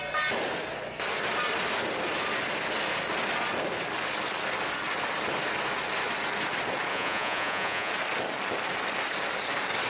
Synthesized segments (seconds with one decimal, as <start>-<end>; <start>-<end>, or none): 6.9-7.9